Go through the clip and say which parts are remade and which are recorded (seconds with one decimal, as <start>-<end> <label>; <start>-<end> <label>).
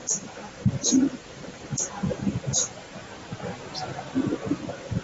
0.0-2.4 remade; 2.4-4.3 recorded; 4.3-5.0 remade